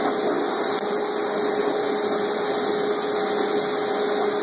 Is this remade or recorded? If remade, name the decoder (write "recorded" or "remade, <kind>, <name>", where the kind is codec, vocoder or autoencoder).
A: recorded